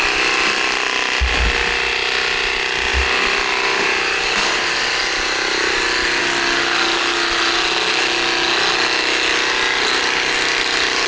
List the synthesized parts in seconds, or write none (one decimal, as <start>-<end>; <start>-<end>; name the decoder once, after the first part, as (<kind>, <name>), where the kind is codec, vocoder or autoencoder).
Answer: none